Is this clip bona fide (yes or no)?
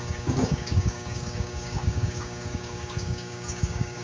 no